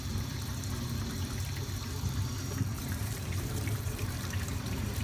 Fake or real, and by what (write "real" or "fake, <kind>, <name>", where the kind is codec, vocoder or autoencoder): fake, vocoder, BigVGAN v2